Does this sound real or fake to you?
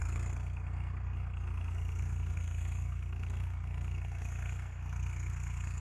fake